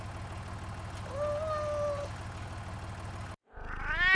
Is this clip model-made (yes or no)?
no